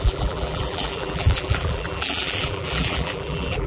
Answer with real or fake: fake